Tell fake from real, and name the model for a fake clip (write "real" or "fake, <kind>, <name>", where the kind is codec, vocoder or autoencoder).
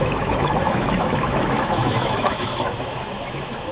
fake, autoencoder, DAC-VAE